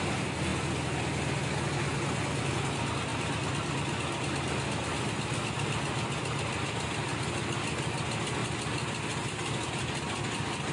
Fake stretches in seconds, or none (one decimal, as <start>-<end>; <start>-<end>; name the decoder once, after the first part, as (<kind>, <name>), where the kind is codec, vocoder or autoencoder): none